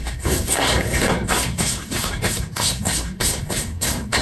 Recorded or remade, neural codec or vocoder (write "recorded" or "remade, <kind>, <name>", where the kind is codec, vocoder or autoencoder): remade, codec, SNAC